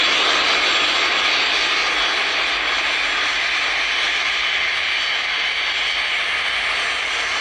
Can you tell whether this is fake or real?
real